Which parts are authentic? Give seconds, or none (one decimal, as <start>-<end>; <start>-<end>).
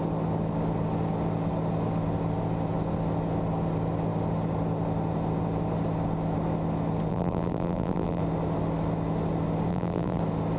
0.0-7.1; 8.2-9.7; 10.2-10.6